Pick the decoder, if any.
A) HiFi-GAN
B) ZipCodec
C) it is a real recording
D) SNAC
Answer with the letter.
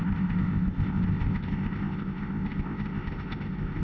B